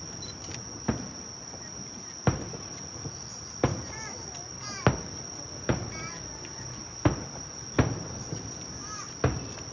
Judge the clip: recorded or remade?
recorded